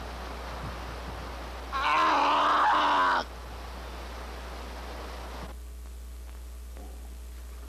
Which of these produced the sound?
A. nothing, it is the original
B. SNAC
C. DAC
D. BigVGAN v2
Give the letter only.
A